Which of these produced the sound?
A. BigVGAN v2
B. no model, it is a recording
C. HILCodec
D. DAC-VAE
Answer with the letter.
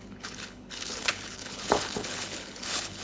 C